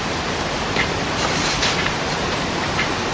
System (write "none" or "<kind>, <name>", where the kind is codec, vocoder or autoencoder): vocoder, BigVGAN v2